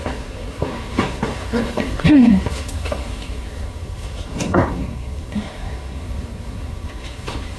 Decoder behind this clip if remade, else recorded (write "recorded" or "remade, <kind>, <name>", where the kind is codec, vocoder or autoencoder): remade, codec, SNAC